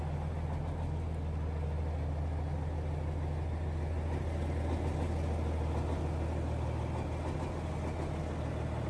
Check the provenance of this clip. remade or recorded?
recorded